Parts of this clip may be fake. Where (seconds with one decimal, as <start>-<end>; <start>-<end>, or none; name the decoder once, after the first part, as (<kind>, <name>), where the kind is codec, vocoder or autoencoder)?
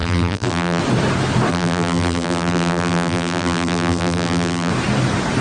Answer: 0.0-0.8 (vocoder, BigVGAN v2); 1.5-4.7